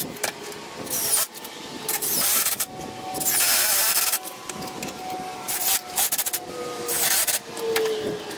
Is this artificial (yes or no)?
no